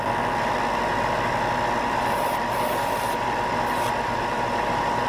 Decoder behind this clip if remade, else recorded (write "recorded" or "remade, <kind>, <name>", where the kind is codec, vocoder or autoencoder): recorded